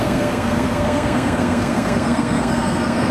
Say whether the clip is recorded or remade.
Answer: remade